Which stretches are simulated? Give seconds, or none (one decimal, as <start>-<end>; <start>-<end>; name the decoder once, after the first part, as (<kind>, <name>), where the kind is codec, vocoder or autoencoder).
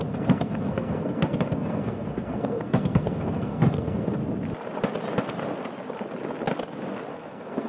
0.0-4.2 (codec, SNAC); 7.1-7.7